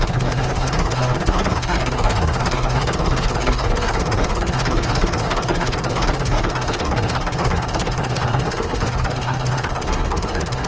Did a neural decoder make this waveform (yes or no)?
yes